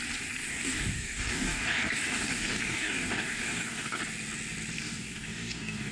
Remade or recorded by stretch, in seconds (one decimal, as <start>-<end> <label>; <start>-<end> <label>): 0.0-0.5 recorded; 0.5-4.0 remade; 4.0-4.8 recorded; 4.8-5.9 remade